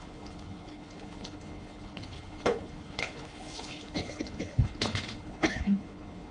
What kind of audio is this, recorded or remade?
remade